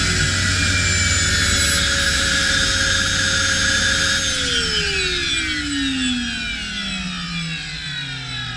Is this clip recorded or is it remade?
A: recorded